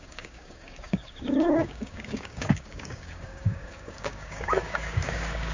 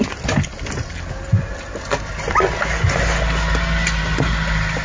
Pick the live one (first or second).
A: second